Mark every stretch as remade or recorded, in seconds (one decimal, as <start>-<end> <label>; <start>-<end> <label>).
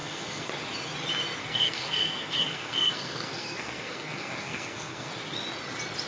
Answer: 0.0-0.5 remade; 0.5-1.4 recorded; 1.4-5.1 remade; 5.1-6.1 recorded